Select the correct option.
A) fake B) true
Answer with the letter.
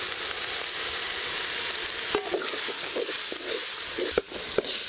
B